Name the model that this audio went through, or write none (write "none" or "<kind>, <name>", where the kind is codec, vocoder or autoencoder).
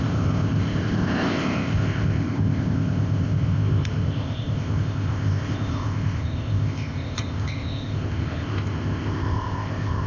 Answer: codec, ZipCodec